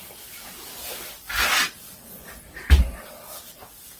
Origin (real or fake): real